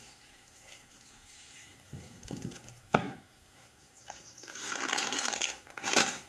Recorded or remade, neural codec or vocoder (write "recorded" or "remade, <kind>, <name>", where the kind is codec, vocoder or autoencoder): remade, codec, SNAC